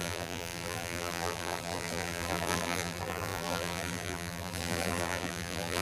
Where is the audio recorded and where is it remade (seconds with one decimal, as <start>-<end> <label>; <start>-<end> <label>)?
0.0-5.8 remade